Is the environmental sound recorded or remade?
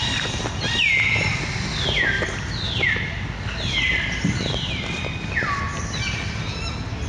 recorded